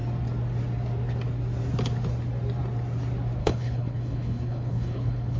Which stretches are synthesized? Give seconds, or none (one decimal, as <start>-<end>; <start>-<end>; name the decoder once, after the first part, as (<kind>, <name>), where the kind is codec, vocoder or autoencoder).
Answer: 3.4-5.4 (codec, HILCodec)